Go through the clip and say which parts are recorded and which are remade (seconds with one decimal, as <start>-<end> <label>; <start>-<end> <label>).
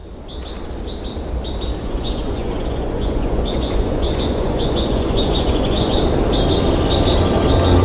0.0-1.8 recorded; 1.8-6.0 remade; 6.0-7.8 recorded